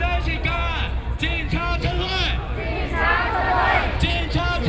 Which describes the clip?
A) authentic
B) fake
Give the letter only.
A